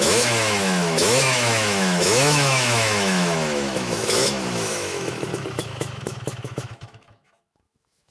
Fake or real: fake